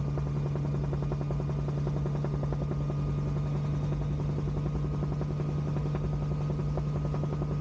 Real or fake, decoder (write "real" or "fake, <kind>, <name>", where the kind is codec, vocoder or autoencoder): real